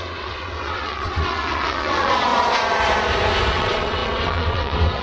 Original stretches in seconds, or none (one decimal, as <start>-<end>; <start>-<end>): 2.3-3.5